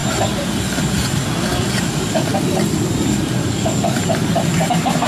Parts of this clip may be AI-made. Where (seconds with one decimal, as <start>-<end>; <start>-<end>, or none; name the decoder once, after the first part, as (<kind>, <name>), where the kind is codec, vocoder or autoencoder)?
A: 1.9-2.3 (codec, DAC); 3.5-4.0